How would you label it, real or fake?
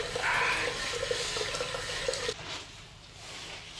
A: real